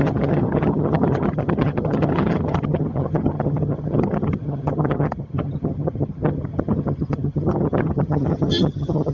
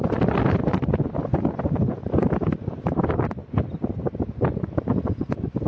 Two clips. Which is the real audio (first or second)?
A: second